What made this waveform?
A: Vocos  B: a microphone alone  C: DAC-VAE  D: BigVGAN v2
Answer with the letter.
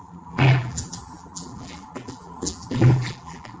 D